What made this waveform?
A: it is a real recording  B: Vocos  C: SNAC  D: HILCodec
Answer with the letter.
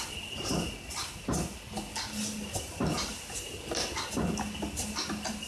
A